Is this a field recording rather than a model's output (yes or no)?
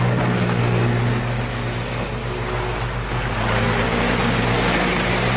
yes